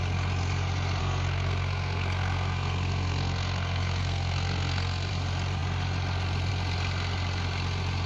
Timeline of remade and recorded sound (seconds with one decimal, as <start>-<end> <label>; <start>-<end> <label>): 0.0-1.0 recorded; 1.0-5.1 remade; 5.1-8.1 recorded